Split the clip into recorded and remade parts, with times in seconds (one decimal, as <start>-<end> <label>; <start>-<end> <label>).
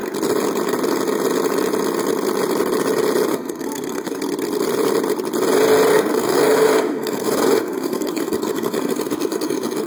0.0-3.3 recorded; 3.3-4.2 remade; 4.2-5.9 recorded; 5.9-9.9 remade